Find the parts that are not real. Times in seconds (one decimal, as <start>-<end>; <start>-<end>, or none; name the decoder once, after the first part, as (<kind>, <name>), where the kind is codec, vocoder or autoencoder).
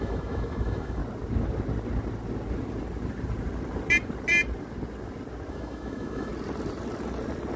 0.0-1.0 (autoencoder, DAC-VAE); 5.5-6.3